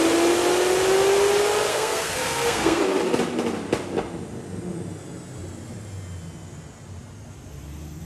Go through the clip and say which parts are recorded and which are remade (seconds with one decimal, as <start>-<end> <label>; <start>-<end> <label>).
0.0-1.7 recorded; 1.7-2.8 remade; 2.8-8.1 recorded